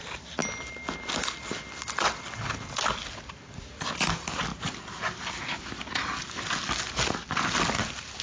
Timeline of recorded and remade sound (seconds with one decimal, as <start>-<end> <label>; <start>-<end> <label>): 0.0-8.2 recorded